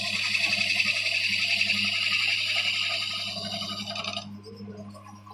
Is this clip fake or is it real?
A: real